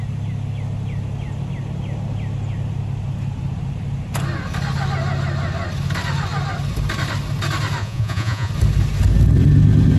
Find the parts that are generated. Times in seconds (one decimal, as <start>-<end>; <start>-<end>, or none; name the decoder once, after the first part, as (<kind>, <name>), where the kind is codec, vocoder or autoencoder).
7.8-8.5 (vocoder, Vocos)

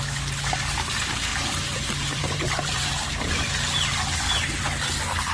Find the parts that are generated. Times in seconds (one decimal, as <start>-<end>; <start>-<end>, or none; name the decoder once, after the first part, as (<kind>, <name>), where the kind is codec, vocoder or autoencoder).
1.3-3.4 (vocoder, BigVGAN v2)

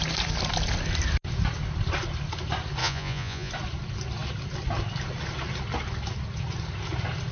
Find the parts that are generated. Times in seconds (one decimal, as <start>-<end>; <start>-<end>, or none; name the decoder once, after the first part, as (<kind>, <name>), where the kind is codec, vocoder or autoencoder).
2.8-3.5 (vocoder, Vocos)

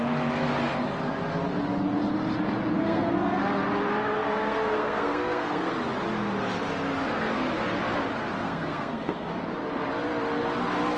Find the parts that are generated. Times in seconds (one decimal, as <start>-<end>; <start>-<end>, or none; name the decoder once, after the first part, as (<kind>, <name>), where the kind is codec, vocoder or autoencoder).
2.8-3.4 (codec, SNAC); 4.2-5.7; 8.4-9.3

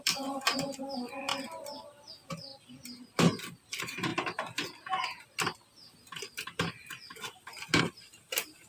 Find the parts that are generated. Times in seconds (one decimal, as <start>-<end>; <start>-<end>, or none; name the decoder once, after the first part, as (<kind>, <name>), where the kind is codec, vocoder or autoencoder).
0.0-1.3 (vocoder, BigVGAN v2); 2.1-2.5; 3.4-4.1; 7.8-8.7

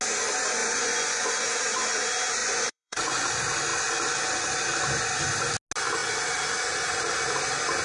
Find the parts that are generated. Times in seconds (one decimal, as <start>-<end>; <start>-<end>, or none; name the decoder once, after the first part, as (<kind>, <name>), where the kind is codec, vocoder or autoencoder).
0.6-1.3 (vocoder, Vocos); 2.4-3.3